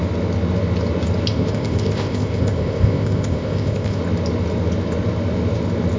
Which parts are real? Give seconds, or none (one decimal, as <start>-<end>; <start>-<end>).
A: 0.0-1.3; 4.0-6.0